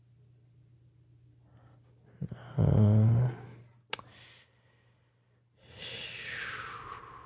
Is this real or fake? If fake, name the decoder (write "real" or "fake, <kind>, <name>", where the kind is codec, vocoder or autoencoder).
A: real